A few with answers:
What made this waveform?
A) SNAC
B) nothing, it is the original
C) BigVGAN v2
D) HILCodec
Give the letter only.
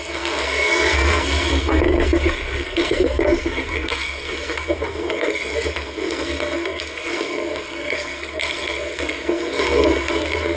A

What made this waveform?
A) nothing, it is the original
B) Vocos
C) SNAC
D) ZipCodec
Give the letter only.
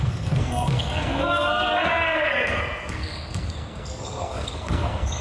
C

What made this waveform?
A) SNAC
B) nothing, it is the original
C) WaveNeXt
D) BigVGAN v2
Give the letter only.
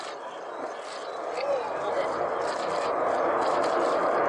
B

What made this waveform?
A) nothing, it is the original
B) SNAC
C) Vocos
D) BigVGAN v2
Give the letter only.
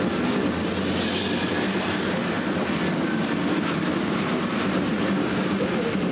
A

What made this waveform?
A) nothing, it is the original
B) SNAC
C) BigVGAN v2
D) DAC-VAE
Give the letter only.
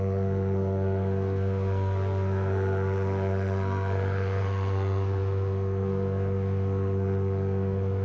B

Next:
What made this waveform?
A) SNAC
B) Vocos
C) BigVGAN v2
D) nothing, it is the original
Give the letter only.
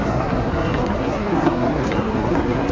A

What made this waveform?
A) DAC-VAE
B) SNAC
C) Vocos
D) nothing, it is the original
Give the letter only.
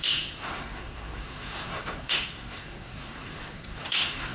B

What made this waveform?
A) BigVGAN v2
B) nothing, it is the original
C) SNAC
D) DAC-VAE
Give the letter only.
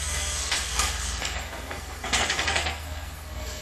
C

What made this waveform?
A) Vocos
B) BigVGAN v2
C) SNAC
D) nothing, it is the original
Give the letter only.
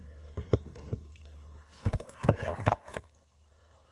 C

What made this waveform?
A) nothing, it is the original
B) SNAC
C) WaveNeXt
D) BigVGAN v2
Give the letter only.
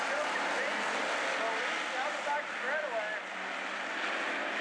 A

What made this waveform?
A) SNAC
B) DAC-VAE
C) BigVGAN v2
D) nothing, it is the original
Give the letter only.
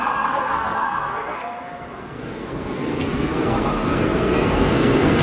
A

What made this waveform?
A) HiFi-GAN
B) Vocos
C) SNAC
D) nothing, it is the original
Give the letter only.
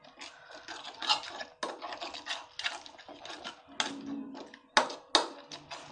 D